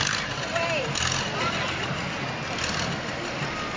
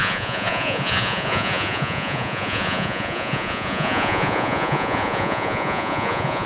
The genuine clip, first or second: first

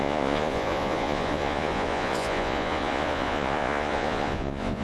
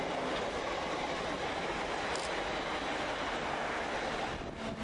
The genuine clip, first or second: second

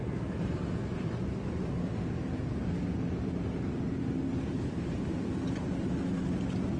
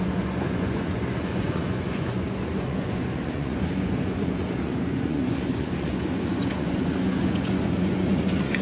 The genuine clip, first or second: first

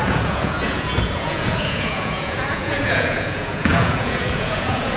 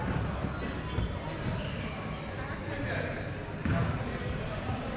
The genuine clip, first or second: second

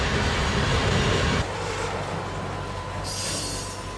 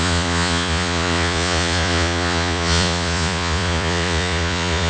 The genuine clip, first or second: first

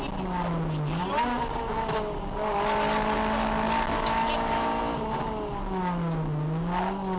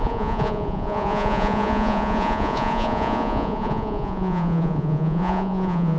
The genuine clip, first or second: first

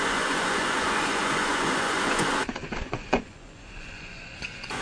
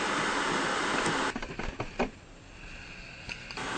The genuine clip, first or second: second